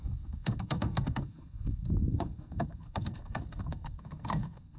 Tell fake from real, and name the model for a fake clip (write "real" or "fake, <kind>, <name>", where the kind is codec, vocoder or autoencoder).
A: fake, codec, SNAC